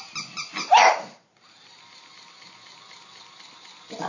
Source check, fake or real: real